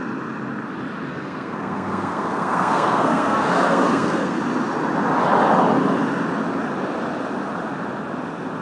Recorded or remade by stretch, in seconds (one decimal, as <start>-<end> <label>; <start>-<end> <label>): 0.0-1.1 recorded; 1.1-4.4 remade; 4.4-8.6 recorded

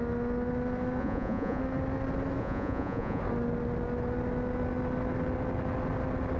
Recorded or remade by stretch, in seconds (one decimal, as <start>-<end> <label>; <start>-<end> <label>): 0.0-1.0 recorded; 1.0-1.6 remade; 1.6-2.4 recorded; 2.4-3.2 remade; 3.2-6.4 recorded

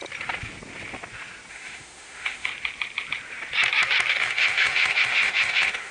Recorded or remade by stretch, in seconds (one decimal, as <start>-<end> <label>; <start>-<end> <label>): 0.0-1.5 recorded; 1.5-2.5 remade; 2.5-4.1 recorded; 4.1-5.9 remade

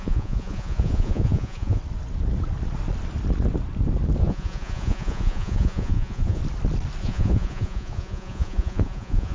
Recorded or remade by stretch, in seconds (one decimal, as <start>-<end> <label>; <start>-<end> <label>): 0.0-1.8 remade; 1.8-4.2 recorded; 4.2-6.4 remade; 6.4-7.0 recorded; 7.0-9.3 remade

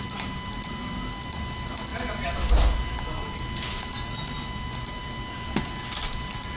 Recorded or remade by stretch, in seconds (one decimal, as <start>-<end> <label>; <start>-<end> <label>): 0.0-6.6 recorded